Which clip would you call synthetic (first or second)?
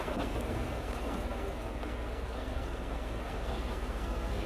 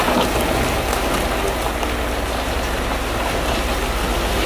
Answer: first